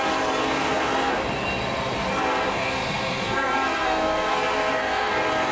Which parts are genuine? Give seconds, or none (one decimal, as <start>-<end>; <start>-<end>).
0.0-0.4; 1.1-2.5; 5.1-5.5